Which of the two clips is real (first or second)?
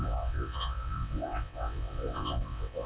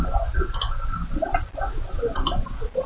second